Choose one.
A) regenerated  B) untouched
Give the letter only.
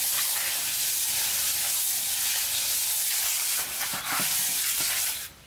B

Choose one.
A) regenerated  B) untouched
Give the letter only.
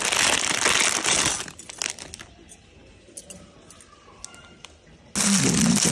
B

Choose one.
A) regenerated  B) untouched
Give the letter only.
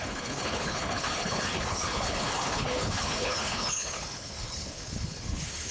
A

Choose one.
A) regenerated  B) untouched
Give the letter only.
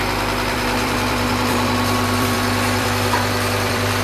A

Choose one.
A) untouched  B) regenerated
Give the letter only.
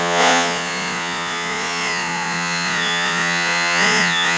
B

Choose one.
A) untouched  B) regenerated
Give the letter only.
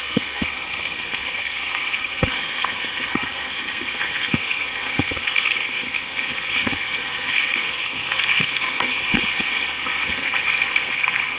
B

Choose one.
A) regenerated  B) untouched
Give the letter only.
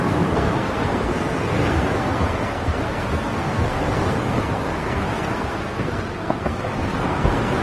A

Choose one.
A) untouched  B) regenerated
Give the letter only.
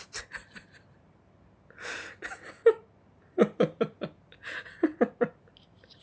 A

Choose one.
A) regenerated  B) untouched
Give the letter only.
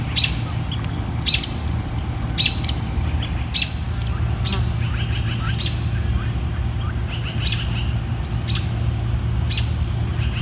B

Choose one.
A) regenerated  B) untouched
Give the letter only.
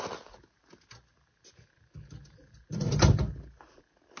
B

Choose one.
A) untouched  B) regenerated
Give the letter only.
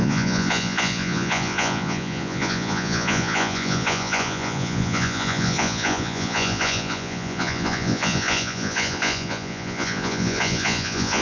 B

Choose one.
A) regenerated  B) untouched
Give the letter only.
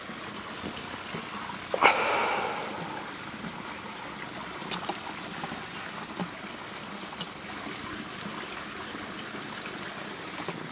B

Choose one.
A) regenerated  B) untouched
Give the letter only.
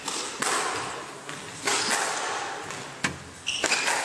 B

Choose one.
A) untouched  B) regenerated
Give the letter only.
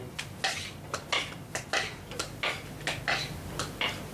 A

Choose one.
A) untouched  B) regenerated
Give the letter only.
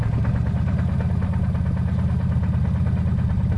A